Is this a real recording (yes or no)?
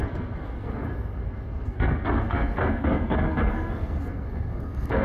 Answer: no